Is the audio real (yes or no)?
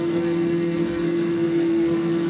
no